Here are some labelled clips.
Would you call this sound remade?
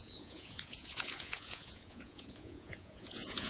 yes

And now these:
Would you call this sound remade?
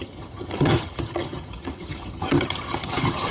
yes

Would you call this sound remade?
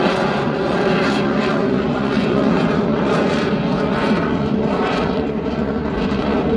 yes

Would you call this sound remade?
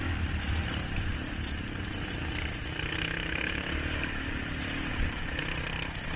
no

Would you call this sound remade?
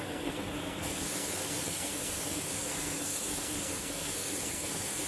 yes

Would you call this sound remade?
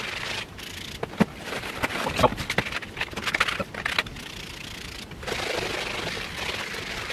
no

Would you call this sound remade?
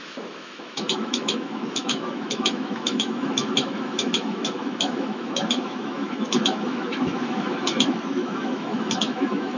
yes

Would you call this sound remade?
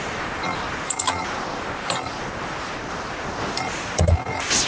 yes